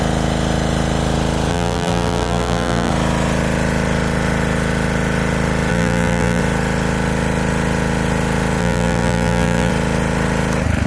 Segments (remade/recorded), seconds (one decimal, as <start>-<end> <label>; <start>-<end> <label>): 0.0-1.5 recorded; 1.5-2.9 remade; 2.9-5.7 recorded; 5.7-6.4 remade; 6.4-8.6 recorded; 8.6-9.7 remade; 9.7-10.9 recorded